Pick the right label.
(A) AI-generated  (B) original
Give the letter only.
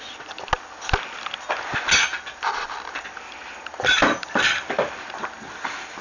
B